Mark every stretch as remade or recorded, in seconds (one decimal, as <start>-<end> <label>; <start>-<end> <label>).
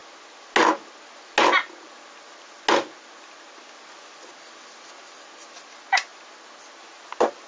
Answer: 0.0-7.5 recorded